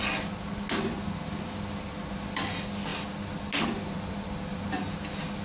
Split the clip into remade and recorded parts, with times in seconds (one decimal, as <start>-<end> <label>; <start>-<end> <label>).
0.0-5.4 recorded